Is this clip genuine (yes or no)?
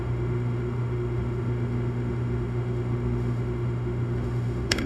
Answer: no